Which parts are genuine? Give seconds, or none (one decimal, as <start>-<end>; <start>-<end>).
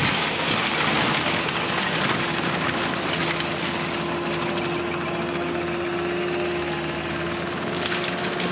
0.0-8.5